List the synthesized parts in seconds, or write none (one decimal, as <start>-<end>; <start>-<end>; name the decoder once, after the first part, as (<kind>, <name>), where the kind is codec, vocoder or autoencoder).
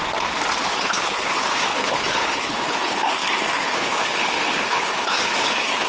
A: 0.6-5.9 (codec, HILCodec)